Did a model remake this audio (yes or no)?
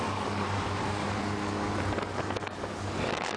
yes